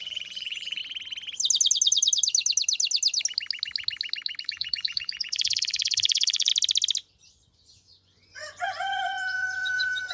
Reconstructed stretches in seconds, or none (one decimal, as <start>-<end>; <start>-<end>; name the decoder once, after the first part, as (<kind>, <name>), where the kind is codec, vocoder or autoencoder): 0.0-0.8 (vocoder, Vocos); 4.4-6.5; 7.2-10.1